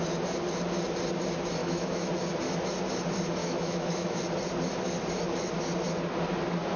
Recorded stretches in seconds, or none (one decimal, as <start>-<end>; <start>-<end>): 0.0-1.6; 2.1-3.4; 4.2-6.8